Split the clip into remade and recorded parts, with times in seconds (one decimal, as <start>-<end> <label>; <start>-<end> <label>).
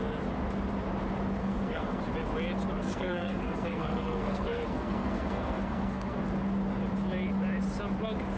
0.0-1.4 recorded; 1.4-2.0 remade; 2.0-2.8 recorded; 2.8-6.2 remade; 6.2-8.4 recorded